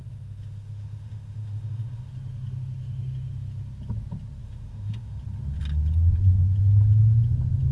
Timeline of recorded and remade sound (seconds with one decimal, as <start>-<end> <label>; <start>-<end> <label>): 0.0-2.1 remade; 2.1-4.4 recorded; 4.4-5.2 remade; 5.2-7.7 recorded